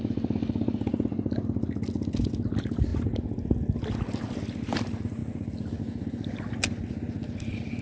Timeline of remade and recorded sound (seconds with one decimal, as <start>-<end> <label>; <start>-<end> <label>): 0.0-7.8 recorded

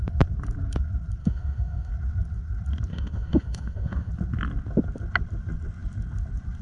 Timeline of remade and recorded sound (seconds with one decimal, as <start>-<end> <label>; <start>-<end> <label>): 0.0-1.2 recorded; 1.2-1.9 remade; 1.9-2.9 recorded; 2.9-4.1 remade; 4.1-6.6 recorded

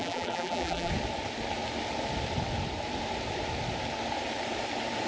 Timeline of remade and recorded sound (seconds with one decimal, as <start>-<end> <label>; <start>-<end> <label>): 0.0-0.9 remade; 0.9-5.1 recorded

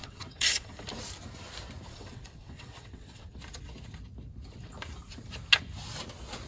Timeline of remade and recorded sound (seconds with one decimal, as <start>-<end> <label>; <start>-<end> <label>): 0.0-0.7 remade; 0.7-1.9 recorded; 1.9-3.4 remade; 3.4-6.5 recorded

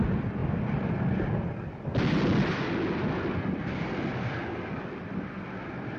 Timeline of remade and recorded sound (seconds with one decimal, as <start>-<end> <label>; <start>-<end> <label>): 0.0-6.0 recorded

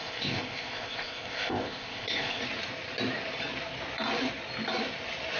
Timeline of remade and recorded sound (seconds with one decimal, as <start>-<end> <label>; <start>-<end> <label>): 0.0-2.4 remade; 2.4-5.4 recorded

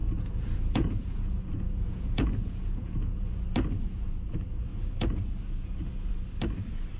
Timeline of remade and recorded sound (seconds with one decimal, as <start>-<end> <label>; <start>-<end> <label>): 0.0-3.3 remade; 3.3-4.7 recorded; 4.7-6.1 remade; 6.1-7.0 recorded